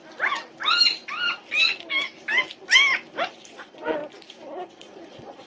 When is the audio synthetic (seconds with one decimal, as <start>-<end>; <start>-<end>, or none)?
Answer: 3.3-4.0; 4.7-5.5